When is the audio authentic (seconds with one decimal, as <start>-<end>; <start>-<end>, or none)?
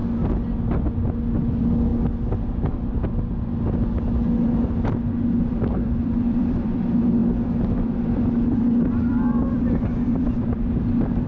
0.0-1.5; 1.9-5.4